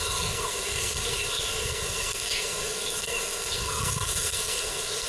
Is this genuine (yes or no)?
no